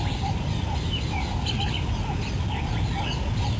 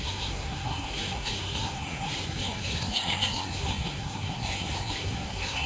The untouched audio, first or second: first